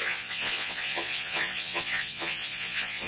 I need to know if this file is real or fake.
fake